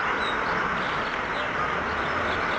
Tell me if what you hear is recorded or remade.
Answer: recorded